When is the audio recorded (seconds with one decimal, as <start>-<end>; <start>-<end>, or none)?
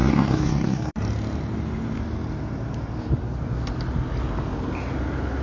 0.9-5.4